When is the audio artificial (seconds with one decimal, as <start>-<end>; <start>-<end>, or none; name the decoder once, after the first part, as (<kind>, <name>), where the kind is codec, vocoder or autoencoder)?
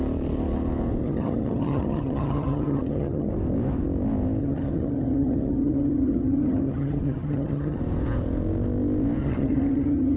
1.0-3.3 (vocoder, HiFi-GAN); 4.4-7.8; 9.2-10.2